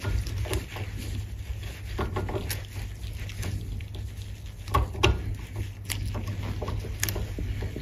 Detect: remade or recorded recorded